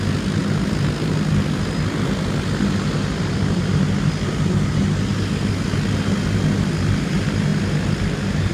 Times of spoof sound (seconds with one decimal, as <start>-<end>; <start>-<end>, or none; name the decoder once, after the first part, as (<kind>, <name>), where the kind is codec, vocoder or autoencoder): none